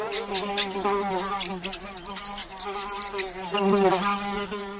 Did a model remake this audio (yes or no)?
no